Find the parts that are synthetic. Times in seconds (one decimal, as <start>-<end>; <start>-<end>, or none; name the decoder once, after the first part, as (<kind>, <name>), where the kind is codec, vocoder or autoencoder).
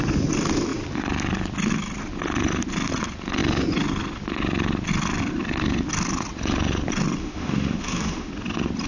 7.2-8.3 (autoencoder, DAC-VAE)